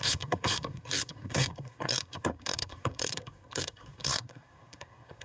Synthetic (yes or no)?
yes